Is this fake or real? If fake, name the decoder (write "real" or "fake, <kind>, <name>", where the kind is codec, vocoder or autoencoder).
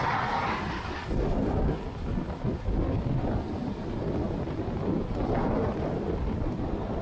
real